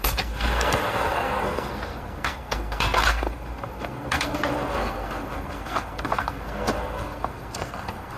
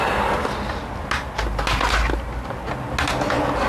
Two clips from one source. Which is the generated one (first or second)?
first